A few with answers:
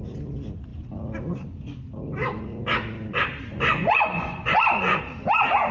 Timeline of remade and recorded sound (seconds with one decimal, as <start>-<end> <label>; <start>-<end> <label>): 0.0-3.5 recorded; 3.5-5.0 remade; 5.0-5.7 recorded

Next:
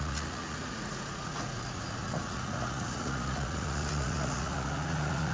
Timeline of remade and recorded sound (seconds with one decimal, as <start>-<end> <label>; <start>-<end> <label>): 0.0-5.3 remade

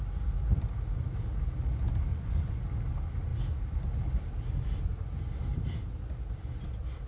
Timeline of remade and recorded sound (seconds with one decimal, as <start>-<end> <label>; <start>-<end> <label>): 0.0-2.1 recorded; 2.1-2.6 remade; 2.6-7.1 recorded

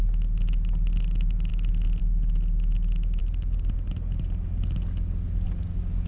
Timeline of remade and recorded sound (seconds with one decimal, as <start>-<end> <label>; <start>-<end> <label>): 0.0-6.1 recorded

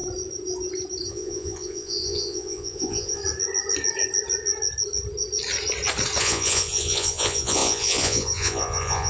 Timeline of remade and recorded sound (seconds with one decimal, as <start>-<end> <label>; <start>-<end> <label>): 0.0-1.1 recorded; 1.1-3.2 remade; 3.2-6.2 recorded; 6.2-9.1 remade

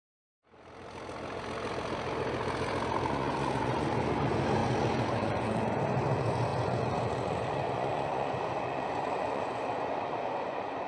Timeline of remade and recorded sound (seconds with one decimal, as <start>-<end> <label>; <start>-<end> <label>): 0.0-3.1 recorded; 3.1-10.9 remade